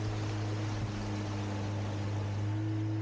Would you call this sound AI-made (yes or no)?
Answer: no